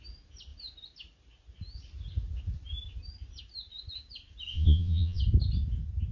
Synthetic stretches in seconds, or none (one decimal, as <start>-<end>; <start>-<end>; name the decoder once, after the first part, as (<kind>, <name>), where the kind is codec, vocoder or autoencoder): 4.5-5.2 (vocoder, Vocos)